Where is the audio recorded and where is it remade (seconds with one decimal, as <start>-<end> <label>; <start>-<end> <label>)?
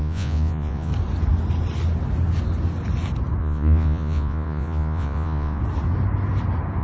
0.0-0.9 remade; 0.9-3.4 recorded; 3.4-5.6 remade; 5.6-6.8 recorded